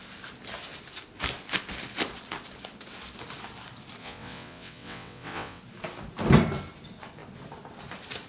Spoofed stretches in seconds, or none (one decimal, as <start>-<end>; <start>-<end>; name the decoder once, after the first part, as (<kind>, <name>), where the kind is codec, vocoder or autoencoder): 4.0-5.6 (vocoder, WaveNeXt)